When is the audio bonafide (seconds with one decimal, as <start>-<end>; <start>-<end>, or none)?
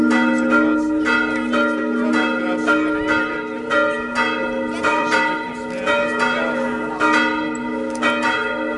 0.0-4.9; 5.5-8.8